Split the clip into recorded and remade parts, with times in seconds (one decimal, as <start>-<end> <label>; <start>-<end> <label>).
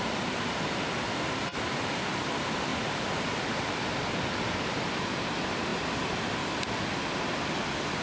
0.0-2.7 recorded; 2.7-3.7 remade; 3.7-8.0 recorded